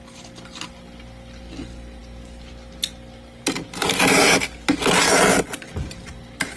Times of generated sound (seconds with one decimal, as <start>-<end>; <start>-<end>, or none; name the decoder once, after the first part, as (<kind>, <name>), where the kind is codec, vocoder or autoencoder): none